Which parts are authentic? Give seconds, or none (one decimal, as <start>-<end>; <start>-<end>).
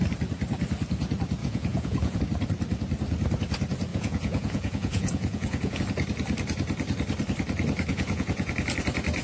0.0-1.4; 2.2-3.9; 5.8-7.9; 8.5-9.2